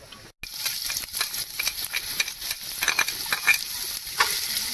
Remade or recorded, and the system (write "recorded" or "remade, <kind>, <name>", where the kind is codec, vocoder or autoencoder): recorded